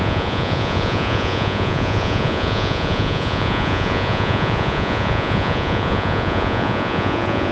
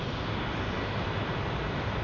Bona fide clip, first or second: second